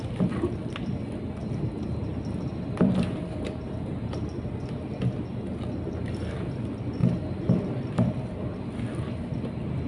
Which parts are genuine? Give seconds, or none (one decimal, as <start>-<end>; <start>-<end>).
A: 0.0-1.4; 2.1-2.5; 4.1-7.0; 8.5-9.9